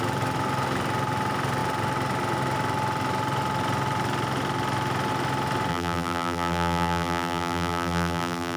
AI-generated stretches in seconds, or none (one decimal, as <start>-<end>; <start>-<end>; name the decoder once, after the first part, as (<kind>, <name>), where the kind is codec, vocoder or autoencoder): 5.7-8.6 (vocoder, BigVGAN v2)